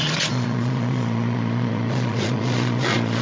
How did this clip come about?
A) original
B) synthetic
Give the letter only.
B